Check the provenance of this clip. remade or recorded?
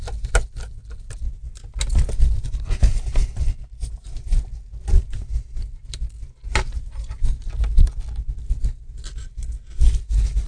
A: recorded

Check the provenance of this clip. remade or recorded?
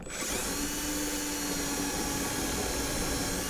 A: recorded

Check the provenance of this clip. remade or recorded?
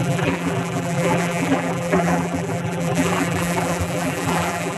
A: remade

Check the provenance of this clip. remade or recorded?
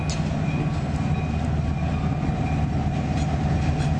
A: recorded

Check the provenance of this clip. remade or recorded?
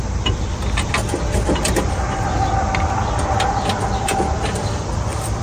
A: remade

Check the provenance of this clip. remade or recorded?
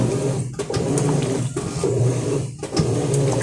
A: remade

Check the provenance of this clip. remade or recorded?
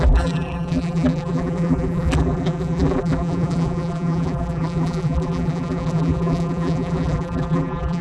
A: remade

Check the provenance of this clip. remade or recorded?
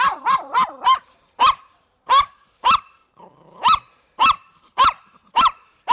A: remade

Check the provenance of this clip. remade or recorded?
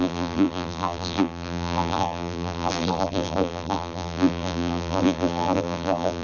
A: remade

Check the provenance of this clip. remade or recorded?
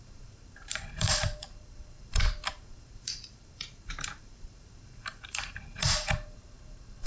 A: remade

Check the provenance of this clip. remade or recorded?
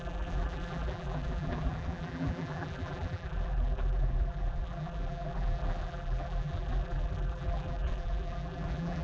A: remade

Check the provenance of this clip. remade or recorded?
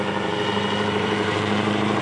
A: remade